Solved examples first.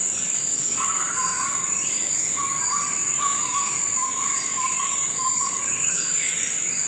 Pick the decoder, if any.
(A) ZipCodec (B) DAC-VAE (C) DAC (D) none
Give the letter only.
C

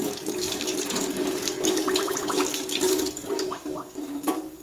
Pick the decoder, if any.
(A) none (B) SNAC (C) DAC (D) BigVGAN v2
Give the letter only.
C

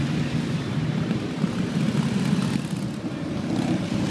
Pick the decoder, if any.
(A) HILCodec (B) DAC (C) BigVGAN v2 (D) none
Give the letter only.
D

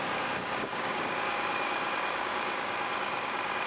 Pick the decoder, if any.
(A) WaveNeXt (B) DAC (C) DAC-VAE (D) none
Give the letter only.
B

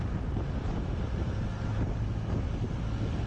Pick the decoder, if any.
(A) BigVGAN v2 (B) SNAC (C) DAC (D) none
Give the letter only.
D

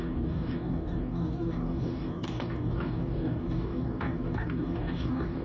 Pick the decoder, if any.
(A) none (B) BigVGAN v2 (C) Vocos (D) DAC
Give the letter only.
D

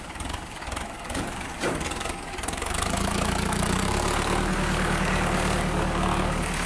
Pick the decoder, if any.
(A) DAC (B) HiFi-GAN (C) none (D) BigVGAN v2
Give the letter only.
A